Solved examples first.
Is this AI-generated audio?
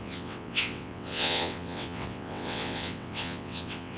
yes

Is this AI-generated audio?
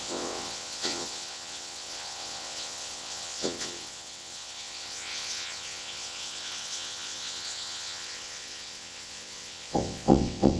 yes